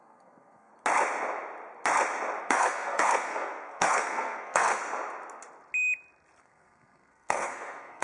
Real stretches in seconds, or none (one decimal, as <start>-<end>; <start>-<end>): 0.7-2.4; 4.8-6.4